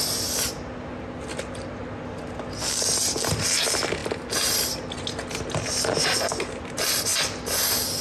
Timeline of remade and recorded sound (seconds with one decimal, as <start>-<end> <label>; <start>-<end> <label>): 0.0-8.0 recorded